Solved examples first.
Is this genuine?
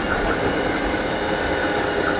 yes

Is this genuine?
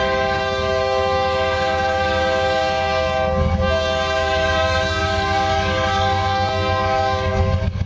no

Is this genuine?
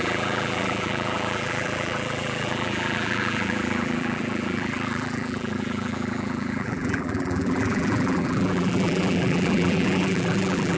no